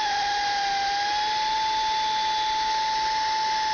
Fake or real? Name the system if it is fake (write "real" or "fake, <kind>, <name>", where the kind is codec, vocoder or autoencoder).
real